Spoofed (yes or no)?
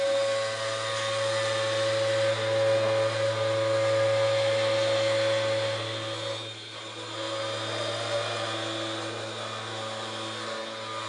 no